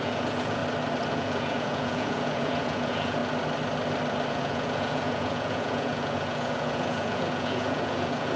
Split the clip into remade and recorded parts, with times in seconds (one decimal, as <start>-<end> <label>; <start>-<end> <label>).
0.0-0.6 remade; 0.6-1.1 recorded; 1.1-3.2 remade; 3.2-4.3 recorded; 4.3-8.4 remade

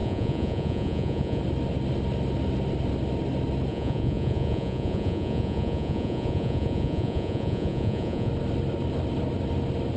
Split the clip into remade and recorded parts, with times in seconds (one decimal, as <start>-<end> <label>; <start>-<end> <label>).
0.0-1.4 remade; 1.4-3.7 recorded; 3.7-8.3 remade; 8.3-10.0 recorded